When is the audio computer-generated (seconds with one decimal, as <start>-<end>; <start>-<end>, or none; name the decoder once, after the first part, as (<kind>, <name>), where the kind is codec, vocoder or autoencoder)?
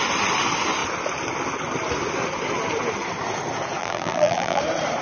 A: 3.8-4.6 (vocoder, BigVGAN v2)